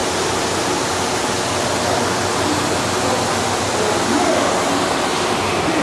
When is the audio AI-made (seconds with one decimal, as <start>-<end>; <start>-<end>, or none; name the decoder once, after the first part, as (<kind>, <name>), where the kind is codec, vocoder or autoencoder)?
5.1-5.8 (vocoder, BigVGAN v2)